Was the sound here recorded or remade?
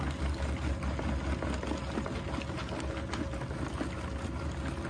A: recorded